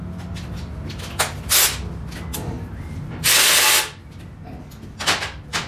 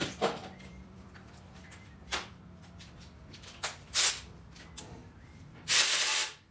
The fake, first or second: second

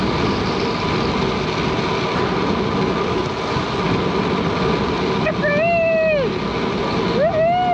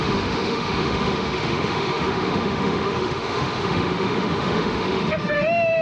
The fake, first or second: second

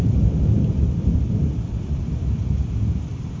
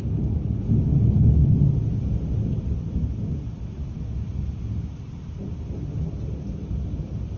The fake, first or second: first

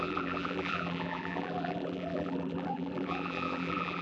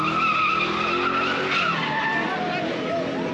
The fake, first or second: first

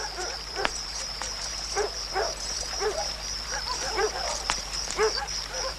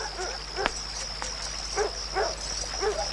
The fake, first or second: first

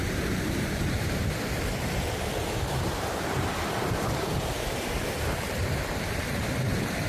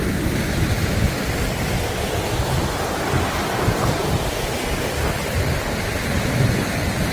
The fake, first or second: first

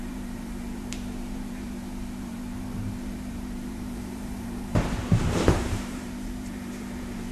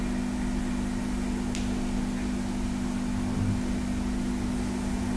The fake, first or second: first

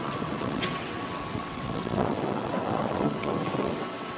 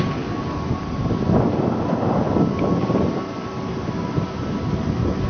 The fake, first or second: first